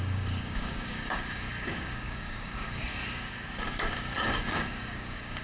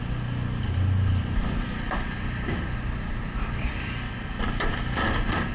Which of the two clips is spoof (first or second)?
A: first